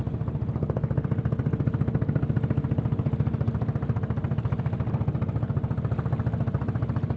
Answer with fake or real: real